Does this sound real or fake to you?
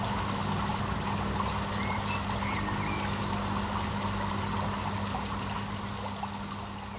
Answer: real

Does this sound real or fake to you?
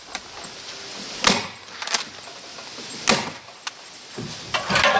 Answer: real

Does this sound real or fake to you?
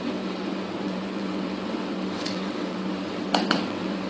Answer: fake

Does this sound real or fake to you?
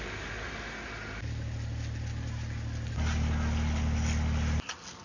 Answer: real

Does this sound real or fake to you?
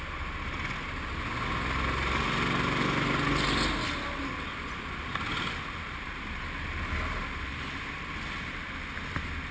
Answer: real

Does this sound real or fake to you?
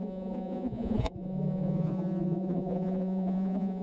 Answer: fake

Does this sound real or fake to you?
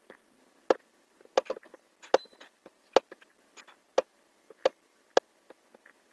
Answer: real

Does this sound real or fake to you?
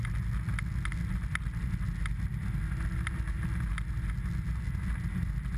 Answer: real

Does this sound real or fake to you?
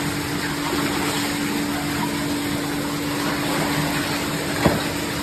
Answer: real